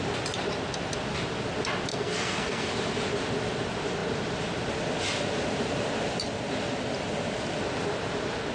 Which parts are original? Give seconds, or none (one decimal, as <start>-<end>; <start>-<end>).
0.0-1.9; 2.7-8.5